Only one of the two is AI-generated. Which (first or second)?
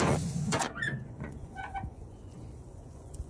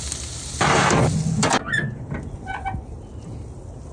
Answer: first